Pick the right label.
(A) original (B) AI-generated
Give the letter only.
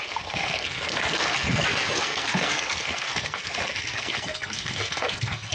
B